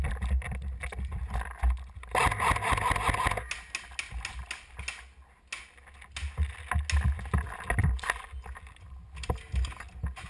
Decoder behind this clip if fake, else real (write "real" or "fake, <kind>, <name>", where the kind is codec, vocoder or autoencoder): real